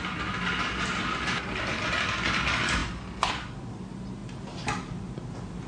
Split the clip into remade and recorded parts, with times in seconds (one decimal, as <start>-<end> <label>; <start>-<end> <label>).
0.0-5.7 recorded